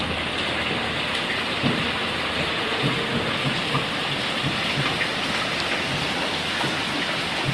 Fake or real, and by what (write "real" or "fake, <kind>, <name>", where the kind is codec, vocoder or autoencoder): real